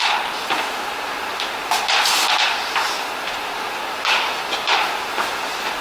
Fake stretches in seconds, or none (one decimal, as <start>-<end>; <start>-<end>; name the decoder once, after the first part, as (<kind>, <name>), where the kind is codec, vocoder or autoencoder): none

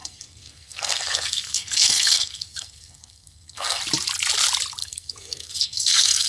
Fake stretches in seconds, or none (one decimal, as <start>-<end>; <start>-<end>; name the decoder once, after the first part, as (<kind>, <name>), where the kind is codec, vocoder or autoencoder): 0.0-3.8 (codec, SNAC); 4.8-6.3

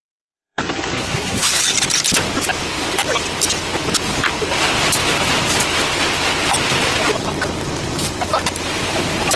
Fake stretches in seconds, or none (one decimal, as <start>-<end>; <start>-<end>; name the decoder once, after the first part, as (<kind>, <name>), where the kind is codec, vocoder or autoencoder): 0.0-1.6 (codec, SNAC)

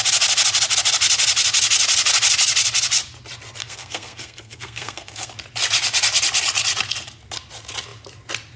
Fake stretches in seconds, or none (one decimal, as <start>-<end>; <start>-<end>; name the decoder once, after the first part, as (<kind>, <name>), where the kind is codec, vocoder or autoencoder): 3.6-5.3 (codec, SNAC)

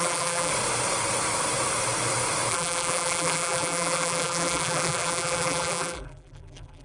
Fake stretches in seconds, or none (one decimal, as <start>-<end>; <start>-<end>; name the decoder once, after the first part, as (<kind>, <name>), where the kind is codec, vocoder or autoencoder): 0.0-0.5 (vocoder, BigVGAN v2); 2.5-6.8

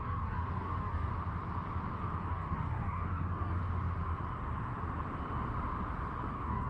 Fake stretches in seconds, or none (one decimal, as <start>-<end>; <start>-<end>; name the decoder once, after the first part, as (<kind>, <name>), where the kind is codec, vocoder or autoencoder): 0.0-1.1 (codec, DAC); 2.3-3.6; 6.3-6.7

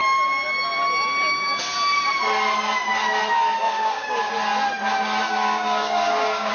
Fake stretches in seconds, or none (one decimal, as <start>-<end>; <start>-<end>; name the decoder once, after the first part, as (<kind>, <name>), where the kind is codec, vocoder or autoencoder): 3.6-4.3 (codec, DAC); 5.2-6.5